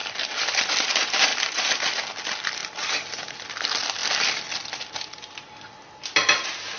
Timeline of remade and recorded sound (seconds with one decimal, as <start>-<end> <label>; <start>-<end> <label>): 0.0-0.9 remade; 0.9-1.3 recorded; 1.3-2.2 remade; 2.2-2.6 recorded; 2.6-3.3 remade; 3.3-6.8 recorded